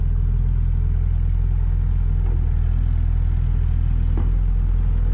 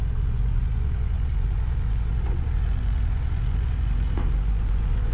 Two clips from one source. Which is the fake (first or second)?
second